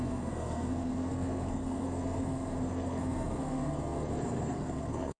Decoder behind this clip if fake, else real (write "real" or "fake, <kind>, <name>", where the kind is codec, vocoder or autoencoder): fake, codec, SNAC